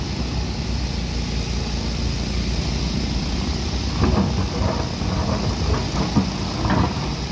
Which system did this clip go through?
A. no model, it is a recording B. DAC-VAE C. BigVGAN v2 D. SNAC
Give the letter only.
A